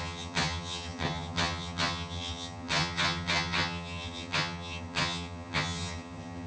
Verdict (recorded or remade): remade